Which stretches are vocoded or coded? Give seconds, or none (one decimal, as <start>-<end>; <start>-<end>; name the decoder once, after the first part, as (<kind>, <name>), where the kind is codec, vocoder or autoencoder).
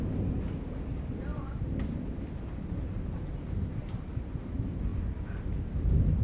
none